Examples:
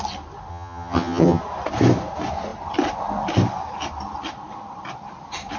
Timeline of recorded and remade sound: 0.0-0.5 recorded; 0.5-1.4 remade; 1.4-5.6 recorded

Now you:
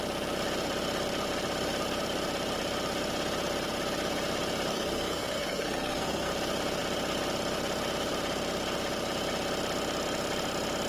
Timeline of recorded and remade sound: 0.0-4.7 recorded; 4.7-6.3 remade; 6.3-10.9 recorded

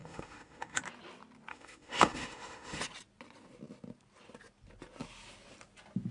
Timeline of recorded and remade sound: 0.0-0.8 remade; 0.8-1.5 recorded; 1.5-2.8 remade; 2.8-6.1 recorded

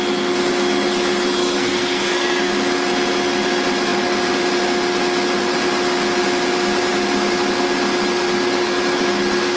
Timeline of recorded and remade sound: 0.0-1.4 recorded; 1.4-2.5 remade; 2.5-9.6 recorded

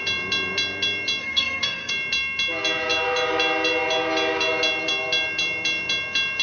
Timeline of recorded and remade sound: 0.0-1.2 recorded; 1.2-1.9 remade; 1.9-6.4 recorded